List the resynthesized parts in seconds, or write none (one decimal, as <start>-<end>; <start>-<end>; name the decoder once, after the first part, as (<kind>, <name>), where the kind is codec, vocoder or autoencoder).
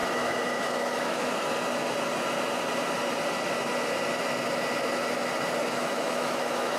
0.0-1.3 (autoencoder, DAC-VAE); 5.6-6.8